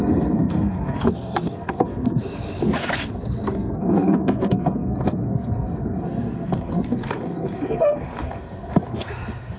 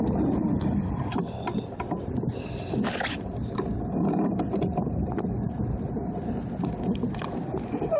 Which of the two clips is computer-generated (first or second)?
first